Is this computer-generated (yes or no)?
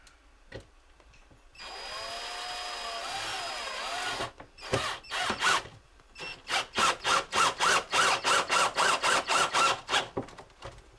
no